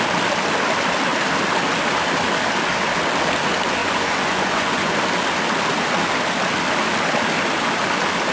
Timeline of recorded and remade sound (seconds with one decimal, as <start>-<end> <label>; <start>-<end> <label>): 0.0-3.8 recorded; 3.8-5.0 remade; 5.0-8.3 recorded